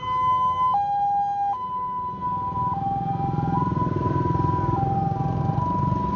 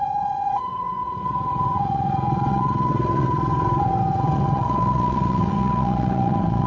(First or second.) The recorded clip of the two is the first